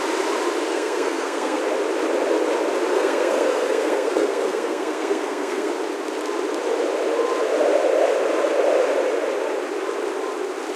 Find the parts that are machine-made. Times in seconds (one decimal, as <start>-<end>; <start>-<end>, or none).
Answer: 0.7-1.6; 2.9-5.7